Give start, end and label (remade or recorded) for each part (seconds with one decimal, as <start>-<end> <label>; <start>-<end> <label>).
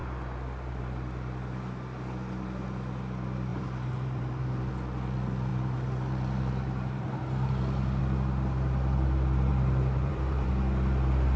0.0-0.8 remade; 0.8-3.5 recorded; 3.5-4.7 remade; 4.7-5.5 recorded; 5.5-8.0 remade; 8.0-9.5 recorded; 9.5-10.5 remade; 10.5-11.4 recorded